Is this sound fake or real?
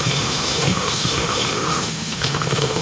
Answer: fake